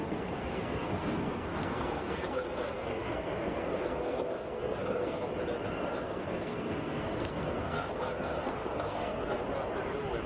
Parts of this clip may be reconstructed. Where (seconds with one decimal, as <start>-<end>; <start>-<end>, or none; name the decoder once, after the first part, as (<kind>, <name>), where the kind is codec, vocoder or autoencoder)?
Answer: 0.0-5.2 (codec, SNAC); 6.0-9.4